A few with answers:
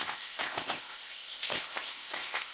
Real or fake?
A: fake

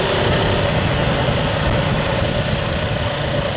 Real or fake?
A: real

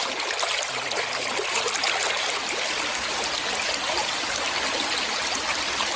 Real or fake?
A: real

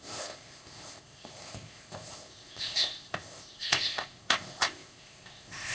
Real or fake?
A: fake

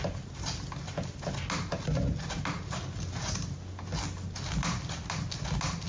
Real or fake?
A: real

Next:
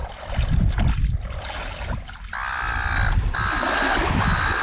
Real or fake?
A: real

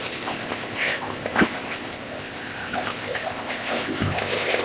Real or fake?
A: fake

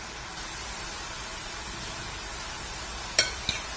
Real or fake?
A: real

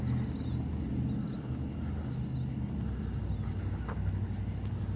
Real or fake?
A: real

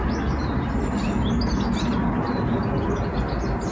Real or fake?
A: real